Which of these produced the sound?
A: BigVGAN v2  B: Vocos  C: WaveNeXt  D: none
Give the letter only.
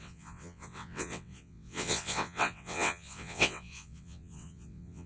C